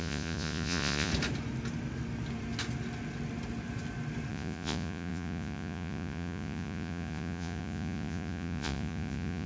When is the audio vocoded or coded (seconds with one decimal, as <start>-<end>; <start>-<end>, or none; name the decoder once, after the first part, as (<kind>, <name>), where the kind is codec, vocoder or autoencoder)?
0.0-1.1 (vocoder, Vocos); 4.3-9.5